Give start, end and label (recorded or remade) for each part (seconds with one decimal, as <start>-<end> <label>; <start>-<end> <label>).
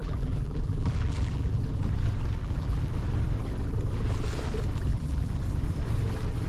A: 0.0-1.6 remade; 1.6-2.4 recorded; 2.4-2.9 remade; 2.9-4.9 recorded; 4.9-5.4 remade; 5.4-6.5 recorded